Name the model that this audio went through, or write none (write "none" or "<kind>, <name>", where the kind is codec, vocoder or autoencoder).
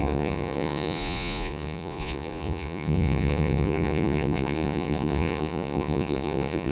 vocoder, Vocos